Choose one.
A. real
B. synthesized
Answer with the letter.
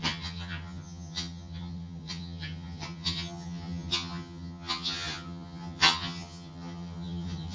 B